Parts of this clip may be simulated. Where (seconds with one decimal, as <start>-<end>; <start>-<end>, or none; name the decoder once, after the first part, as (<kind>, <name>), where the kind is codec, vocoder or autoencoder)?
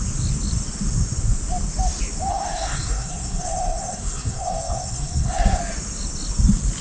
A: 2.3-5.6 (codec, SNAC)